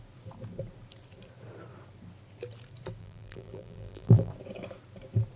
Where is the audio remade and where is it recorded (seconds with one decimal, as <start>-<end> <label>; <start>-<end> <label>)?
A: 0.0-3.0 recorded; 3.0-4.3 remade; 4.3-5.4 recorded